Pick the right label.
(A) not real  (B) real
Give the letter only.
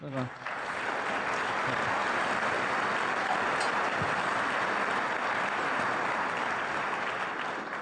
B